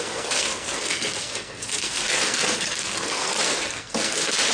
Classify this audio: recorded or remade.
remade